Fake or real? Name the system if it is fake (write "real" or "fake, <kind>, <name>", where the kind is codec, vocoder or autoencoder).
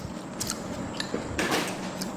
real